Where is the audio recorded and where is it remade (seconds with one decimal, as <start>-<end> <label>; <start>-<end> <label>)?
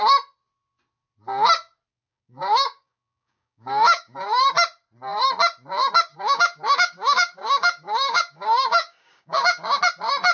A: 0.0-1.9 recorded; 1.9-4.4 remade; 4.4-6.1 recorded; 6.1-9.8 remade; 9.8-10.3 recorded